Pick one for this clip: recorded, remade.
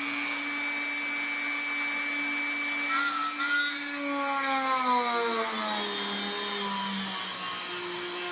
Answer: recorded